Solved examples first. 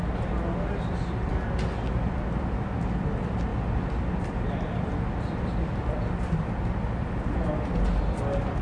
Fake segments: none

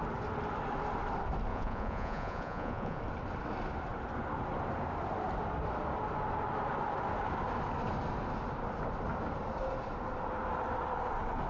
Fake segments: 1.5-3.0 (vocoder, Vocos)

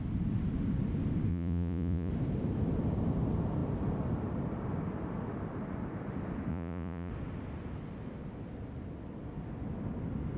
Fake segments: 1.3-2.1 (vocoder, Vocos); 6.5-7.1